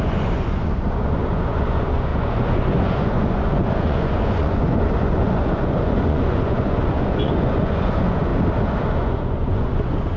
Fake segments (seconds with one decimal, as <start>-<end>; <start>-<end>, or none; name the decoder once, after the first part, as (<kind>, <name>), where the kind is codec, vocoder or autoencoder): 0.0-8.3 (vocoder, Vocos); 8.9-10.2